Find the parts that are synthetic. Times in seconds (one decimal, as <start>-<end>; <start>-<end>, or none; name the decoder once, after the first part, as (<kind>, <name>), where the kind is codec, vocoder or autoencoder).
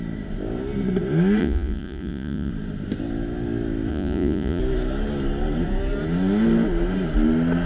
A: 1.4-2.5 (vocoder, Vocos); 3.9-4.6